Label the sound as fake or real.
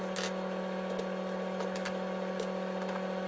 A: real